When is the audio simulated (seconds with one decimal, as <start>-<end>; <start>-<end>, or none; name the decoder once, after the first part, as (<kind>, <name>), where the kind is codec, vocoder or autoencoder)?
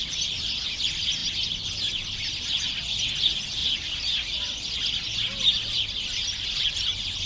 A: 3.6-4.7 (vocoder, BigVGAN v2)